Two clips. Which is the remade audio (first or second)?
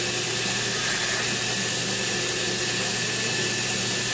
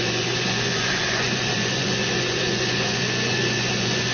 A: second